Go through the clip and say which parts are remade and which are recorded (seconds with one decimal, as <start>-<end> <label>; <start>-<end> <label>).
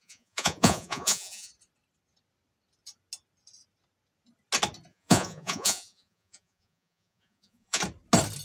0.0-1.5 remade; 1.5-4.9 recorded; 4.9-7.8 remade; 7.8-8.4 recorded